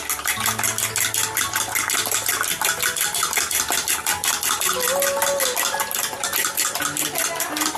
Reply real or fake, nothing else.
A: real